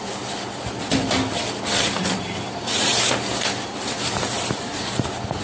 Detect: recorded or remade recorded